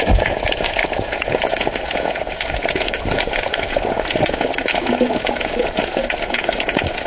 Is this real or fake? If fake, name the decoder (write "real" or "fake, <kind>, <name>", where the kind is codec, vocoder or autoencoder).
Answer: fake, vocoder, Vocos